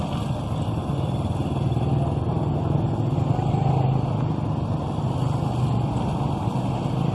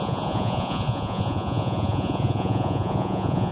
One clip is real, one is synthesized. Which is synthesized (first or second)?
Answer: second